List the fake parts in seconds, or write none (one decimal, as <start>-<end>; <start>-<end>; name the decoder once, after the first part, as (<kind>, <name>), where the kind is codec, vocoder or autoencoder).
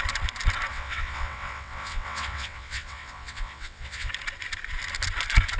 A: 0.7-4.1 (vocoder, WaveNeXt)